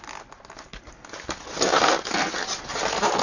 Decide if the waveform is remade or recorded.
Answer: recorded